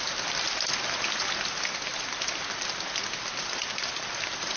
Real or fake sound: real